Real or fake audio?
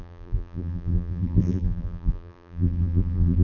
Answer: fake